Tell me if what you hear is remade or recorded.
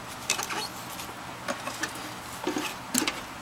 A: recorded